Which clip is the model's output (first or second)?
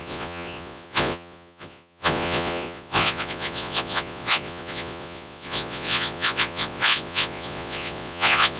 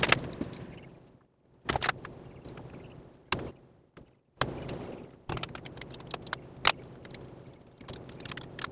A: first